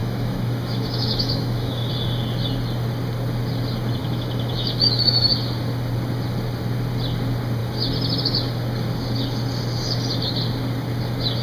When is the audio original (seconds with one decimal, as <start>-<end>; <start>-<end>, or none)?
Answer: 1.9-4.0; 5.3-11.4